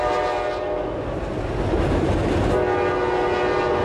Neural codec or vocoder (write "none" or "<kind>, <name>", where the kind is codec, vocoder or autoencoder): none